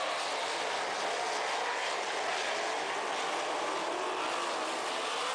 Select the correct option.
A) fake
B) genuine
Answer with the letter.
B